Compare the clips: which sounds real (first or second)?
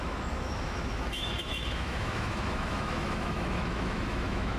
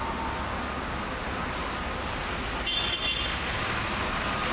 second